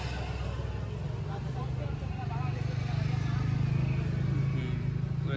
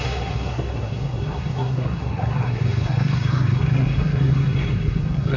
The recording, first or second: first